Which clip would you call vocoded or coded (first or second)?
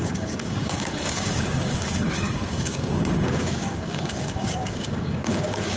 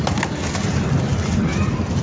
first